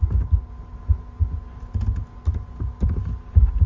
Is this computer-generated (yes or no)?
no